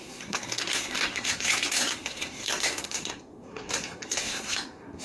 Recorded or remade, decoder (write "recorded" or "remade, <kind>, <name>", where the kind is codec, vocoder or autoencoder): remade, codec, SNAC